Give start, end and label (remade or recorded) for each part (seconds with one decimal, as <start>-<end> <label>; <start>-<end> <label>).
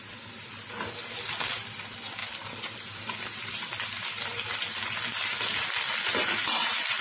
0.0-7.0 recorded